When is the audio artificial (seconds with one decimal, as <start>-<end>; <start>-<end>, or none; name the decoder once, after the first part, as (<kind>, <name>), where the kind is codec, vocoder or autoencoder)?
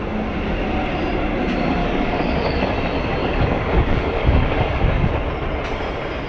1.8-2.7 (codec, DAC); 3.2-5.1